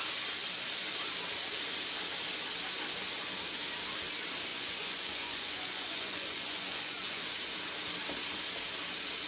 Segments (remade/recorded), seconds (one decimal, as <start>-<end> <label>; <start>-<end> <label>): 0.0-4.5 recorded; 4.5-7.2 remade; 7.2-9.3 recorded